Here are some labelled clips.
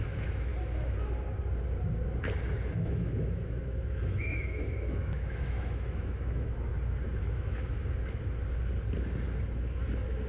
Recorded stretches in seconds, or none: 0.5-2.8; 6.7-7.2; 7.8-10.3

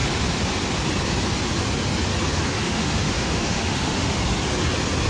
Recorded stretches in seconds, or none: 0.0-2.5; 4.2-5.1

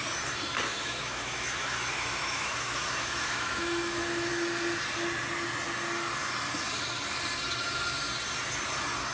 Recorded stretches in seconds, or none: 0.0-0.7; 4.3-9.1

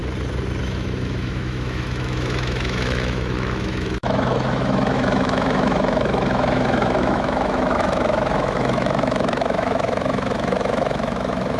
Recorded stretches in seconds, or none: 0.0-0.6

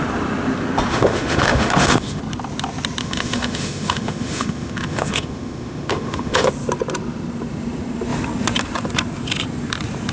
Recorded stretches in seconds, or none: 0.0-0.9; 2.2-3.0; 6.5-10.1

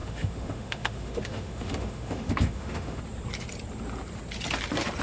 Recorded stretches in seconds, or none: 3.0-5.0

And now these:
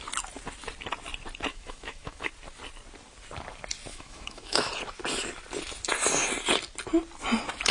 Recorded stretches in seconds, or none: 0.0-1.5; 2.3-3.9; 4.7-7.7